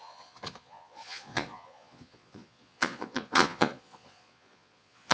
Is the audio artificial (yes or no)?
yes